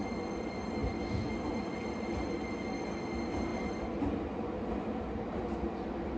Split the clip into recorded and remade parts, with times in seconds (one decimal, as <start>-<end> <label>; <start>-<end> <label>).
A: 0.0-6.2 recorded